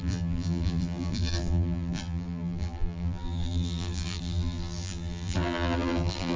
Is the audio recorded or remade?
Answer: remade